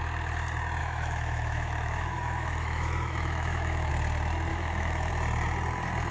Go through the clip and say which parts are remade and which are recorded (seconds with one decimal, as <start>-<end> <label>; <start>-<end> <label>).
0.0-0.8 recorded; 0.8-3.9 remade; 3.9-4.5 recorded; 4.5-5.1 remade; 5.1-6.1 recorded